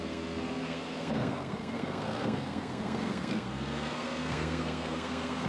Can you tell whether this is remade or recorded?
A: remade